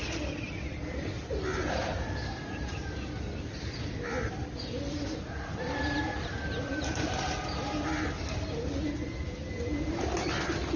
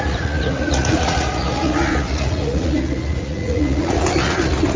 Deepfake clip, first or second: second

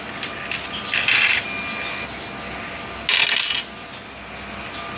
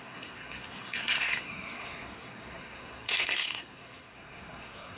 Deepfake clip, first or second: second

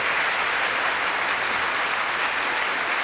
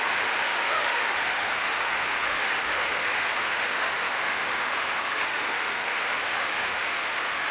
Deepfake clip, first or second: second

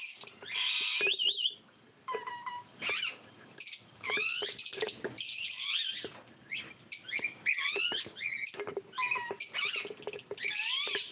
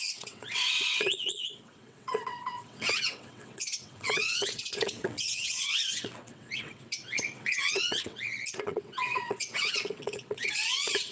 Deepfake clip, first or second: second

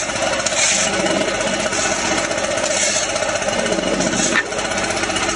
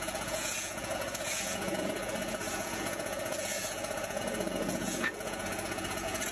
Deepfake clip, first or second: second